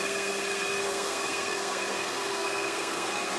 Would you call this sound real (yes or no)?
no